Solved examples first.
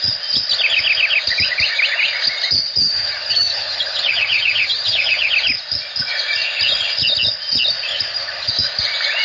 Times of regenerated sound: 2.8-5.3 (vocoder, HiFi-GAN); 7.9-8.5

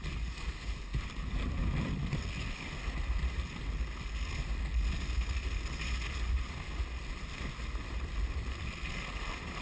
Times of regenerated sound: none

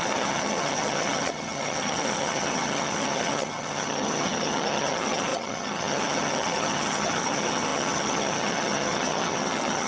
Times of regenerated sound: 0.0-9.9 (vocoder, HiFi-GAN)

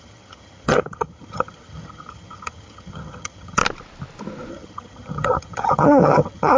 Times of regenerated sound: 0.0-3.6 (vocoder, HiFi-GAN); 4.5-6.6